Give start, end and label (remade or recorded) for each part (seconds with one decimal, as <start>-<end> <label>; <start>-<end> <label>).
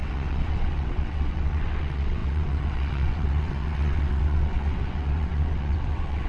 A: 0.0-6.3 remade